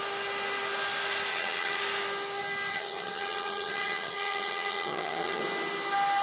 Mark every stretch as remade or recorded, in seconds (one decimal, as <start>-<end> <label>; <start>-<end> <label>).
0.0-1.3 recorded; 1.3-1.8 remade; 1.8-2.7 recorded; 2.7-5.4 remade; 5.4-6.2 recorded